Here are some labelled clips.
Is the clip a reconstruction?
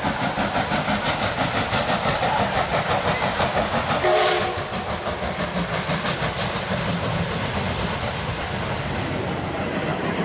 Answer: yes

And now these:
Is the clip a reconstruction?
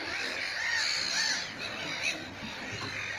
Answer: no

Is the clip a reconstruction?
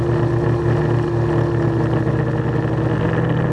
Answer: no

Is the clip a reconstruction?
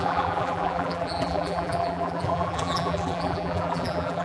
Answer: yes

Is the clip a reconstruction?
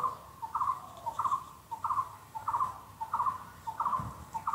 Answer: yes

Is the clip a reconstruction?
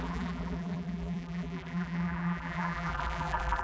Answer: yes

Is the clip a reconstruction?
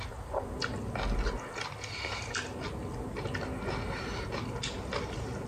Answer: no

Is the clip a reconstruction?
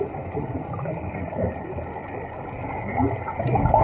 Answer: no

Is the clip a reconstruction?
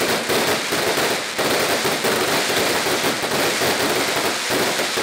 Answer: no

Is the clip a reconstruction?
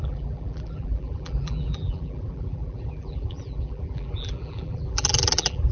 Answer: yes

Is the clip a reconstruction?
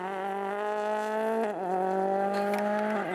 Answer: no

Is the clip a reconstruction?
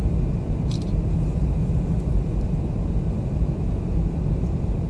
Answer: yes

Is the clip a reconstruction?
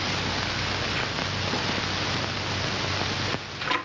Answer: no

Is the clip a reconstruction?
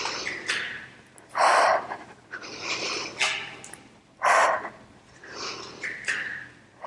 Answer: yes